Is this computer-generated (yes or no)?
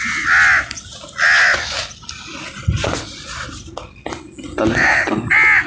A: no